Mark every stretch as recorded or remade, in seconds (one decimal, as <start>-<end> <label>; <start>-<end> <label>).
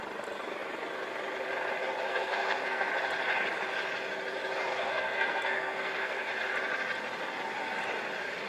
0.0-2.1 recorded; 2.1-2.9 remade; 2.9-4.7 recorded; 4.7-6.3 remade; 6.3-8.5 recorded